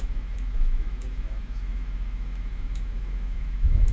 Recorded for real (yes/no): no